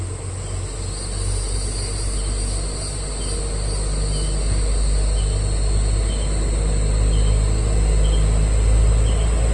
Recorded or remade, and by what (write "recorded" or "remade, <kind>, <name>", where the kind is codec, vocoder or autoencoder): recorded